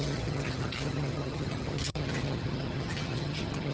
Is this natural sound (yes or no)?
no